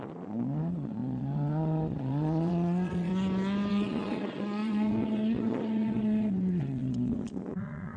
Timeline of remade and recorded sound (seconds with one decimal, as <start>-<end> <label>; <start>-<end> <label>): 0.0-3.1 remade; 3.1-3.7 recorded; 3.7-8.0 remade